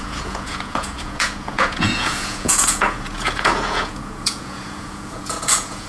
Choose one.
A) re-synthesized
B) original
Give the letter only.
A